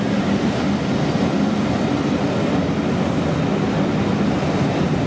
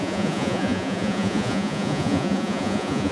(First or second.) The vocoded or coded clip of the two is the second